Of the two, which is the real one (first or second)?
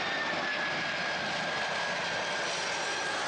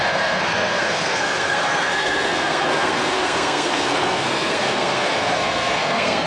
first